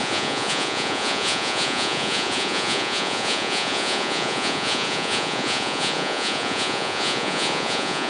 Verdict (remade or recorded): remade